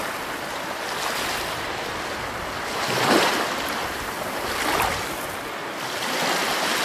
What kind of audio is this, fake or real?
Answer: real